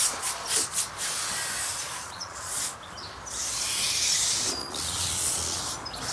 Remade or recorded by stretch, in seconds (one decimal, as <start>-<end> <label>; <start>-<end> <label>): 0.0-2.0 recorded; 2.0-2.6 remade; 2.6-4.6 recorded; 4.6-5.6 remade; 5.6-6.1 recorded